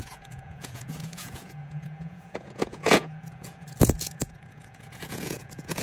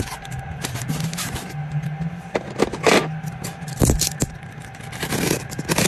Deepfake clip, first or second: first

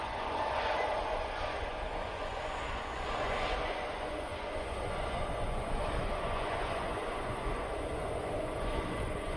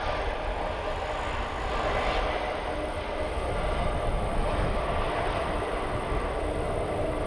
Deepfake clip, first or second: first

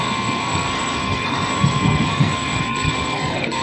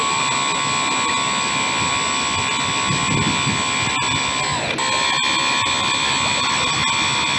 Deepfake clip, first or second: first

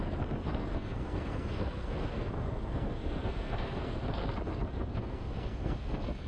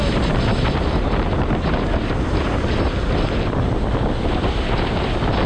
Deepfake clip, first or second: first